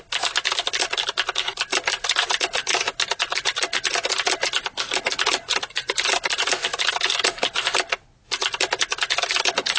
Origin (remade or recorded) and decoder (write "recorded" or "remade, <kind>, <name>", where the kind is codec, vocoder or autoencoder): recorded